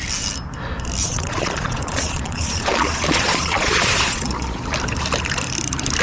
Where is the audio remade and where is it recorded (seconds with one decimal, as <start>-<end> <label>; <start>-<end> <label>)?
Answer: 0.0-1.0 recorded; 1.0-4.6 remade; 4.6-6.0 recorded